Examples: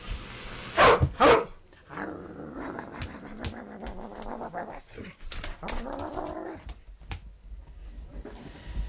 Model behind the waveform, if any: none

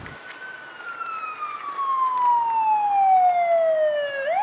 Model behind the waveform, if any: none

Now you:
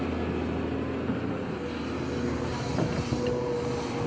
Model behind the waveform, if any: none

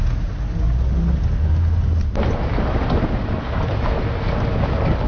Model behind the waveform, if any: none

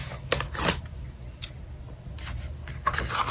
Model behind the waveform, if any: none